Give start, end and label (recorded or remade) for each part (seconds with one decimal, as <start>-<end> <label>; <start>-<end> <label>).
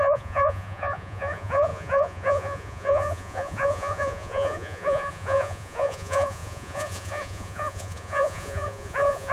0.0-9.3 remade